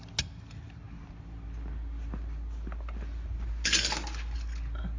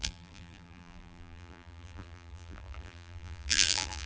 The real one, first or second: first